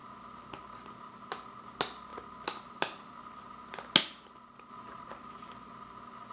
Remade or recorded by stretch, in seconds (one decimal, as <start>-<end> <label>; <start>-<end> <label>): 0.0-6.3 recorded